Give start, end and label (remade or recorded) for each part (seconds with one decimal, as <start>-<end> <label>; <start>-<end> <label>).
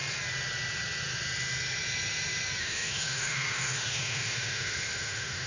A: 0.0-2.6 recorded; 2.6-5.5 remade